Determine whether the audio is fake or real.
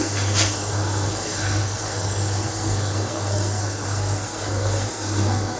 fake